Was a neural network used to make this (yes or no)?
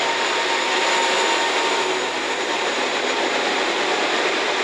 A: no